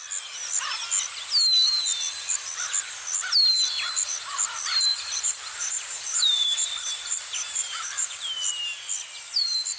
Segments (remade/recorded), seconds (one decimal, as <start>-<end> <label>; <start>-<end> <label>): 0.0-4.9 recorded; 4.9-8.3 remade; 8.3-9.8 recorded